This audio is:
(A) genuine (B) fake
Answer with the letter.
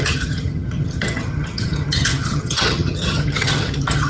B